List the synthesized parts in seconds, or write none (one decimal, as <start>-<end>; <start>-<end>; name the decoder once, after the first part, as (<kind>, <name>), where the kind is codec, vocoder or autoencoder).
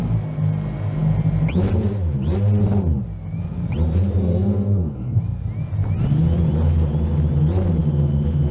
4.2-5.2 (codec, SNAC)